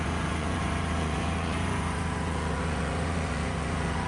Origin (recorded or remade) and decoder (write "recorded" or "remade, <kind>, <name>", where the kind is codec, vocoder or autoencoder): remade, vocoder, Vocos